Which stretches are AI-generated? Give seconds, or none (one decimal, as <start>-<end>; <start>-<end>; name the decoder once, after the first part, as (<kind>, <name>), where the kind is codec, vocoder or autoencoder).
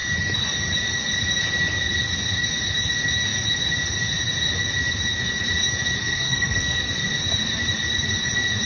6.0-6.8 (codec, SNAC)